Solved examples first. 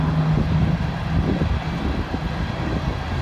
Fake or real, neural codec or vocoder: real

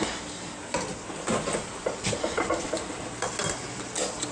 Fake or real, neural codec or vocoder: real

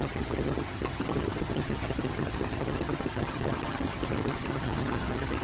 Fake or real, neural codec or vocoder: fake, vocoder, HiFi-GAN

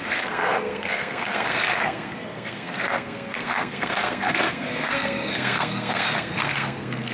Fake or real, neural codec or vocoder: fake, codec, SNAC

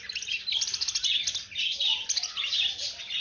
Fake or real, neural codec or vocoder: real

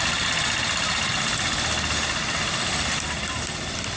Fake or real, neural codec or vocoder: real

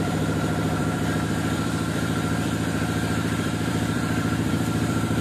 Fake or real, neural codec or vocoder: fake, vocoder, BigVGAN v2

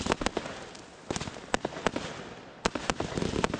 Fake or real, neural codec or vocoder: real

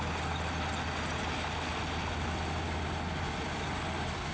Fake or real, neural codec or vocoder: real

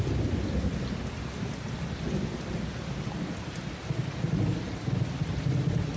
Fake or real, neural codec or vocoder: real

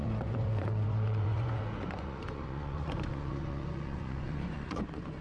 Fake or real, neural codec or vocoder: fake, vocoder, Vocos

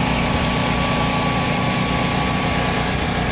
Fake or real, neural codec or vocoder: real